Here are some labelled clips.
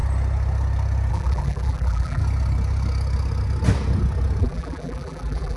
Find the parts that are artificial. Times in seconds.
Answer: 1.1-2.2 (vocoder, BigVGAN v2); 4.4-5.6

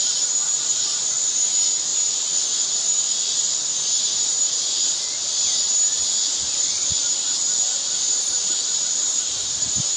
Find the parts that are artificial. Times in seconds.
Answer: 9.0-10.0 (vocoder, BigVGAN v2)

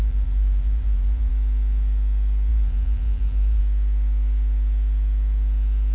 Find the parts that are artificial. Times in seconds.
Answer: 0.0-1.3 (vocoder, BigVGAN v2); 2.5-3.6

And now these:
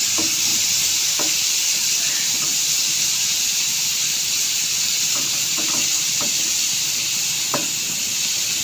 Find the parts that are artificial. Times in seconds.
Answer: 0.5-4.5 (vocoder, BigVGAN v2)

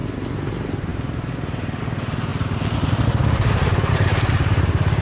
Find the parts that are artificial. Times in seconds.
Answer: 0.5-2.3 (vocoder, BigVGAN v2); 3.2-5.0